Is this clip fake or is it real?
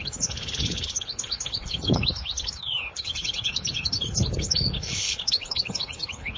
fake